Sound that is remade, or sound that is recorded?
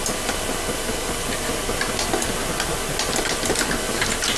recorded